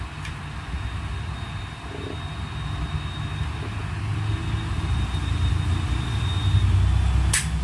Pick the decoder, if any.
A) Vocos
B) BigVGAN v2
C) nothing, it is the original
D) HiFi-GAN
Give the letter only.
C